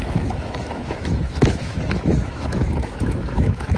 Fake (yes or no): yes